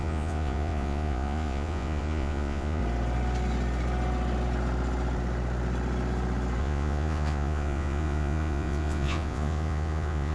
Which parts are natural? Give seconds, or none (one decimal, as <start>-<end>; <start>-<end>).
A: 2.8-6.6